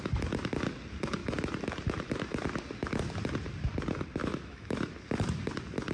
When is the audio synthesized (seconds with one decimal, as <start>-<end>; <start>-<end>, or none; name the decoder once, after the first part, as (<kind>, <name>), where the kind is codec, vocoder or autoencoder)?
4.2-4.9 (autoencoder, DAC-VAE)